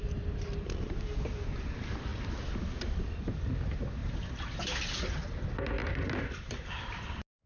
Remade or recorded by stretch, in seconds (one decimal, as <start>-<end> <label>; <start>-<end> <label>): 0.0-4.0 recorded; 4.0-4.8 remade; 4.8-5.8 recorded; 5.8-7.0 remade; 7.0-7.5 recorded